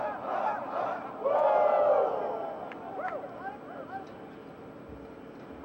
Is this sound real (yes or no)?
yes